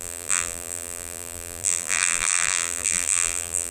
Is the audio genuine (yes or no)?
no